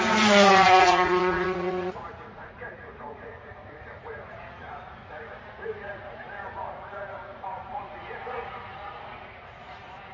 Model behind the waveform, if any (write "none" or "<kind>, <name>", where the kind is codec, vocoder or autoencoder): vocoder, Vocos